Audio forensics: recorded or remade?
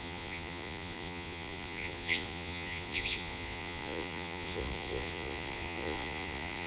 remade